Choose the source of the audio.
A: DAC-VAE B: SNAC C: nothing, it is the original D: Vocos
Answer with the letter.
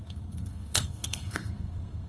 B